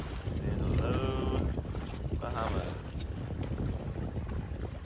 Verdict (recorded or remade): recorded